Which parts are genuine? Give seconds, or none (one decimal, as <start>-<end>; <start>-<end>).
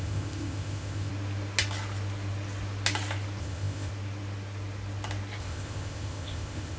1.1-3.4; 3.9-5.4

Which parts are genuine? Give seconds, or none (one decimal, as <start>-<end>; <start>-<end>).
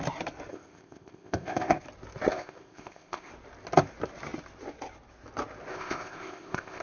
0.0-0.5; 1.8-2.3; 3.3-5.7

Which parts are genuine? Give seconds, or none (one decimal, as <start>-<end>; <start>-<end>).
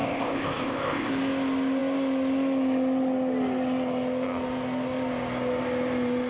1.1-6.3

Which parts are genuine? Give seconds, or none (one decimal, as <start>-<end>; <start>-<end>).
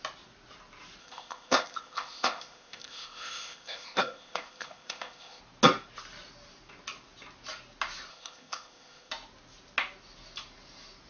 0.0-1.0; 5.4-8.1; 9.1-11.1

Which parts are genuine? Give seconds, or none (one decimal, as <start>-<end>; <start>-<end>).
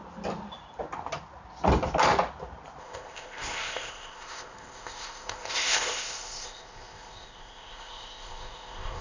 0.0-2.8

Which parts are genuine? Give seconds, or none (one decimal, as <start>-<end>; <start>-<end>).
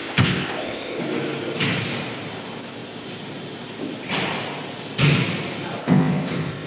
1.0-5.8